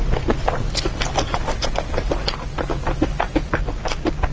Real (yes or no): yes